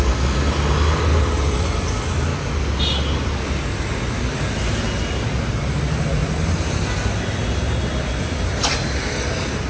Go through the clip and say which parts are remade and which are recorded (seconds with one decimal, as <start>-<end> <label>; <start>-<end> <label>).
0.0-1.1 recorded; 1.1-1.8 remade; 1.8-6.2 recorded; 6.2-6.9 remade; 6.9-9.7 recorded